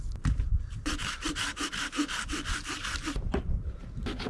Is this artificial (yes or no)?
yes